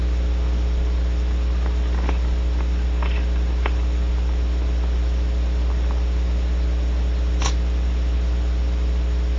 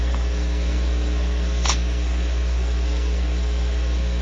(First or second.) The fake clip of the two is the second